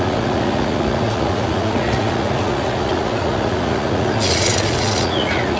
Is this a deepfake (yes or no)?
yes